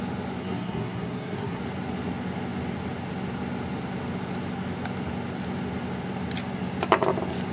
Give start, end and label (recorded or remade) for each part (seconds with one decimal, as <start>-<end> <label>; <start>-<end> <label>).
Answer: 0.0-0.4 recorded; 0.4-1.6 remade; 1.6-7.5 recorded